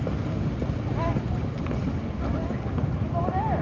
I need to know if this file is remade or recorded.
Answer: recorded